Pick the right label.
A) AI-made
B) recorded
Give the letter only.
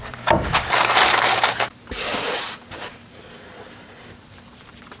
A